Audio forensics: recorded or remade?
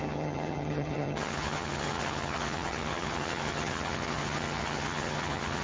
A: remade